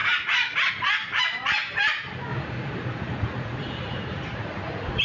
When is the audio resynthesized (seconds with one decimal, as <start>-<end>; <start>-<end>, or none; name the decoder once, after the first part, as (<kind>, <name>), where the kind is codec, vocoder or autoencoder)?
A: 0.0-0.7 (vocoder, Vocos); 2.3-5.0